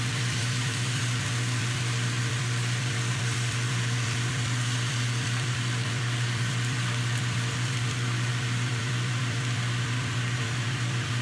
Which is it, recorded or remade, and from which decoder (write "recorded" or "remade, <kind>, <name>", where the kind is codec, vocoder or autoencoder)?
remade, vocoder, BigVGAN v2